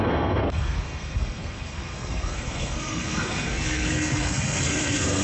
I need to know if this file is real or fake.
fake